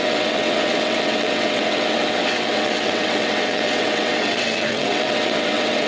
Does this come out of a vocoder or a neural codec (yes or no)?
yes